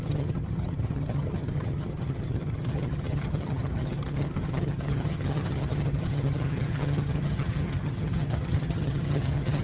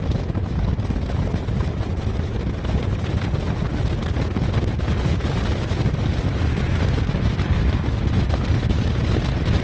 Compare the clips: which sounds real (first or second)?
second